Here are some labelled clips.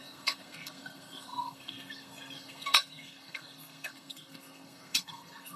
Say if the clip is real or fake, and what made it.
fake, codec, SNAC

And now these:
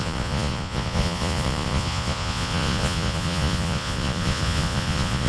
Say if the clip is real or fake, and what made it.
fake, vocoder, Vocos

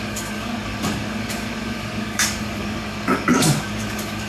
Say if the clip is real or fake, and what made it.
fake, codec, DAC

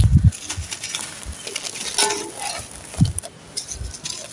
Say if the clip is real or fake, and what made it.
real